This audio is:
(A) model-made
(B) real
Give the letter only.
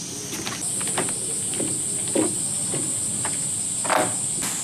B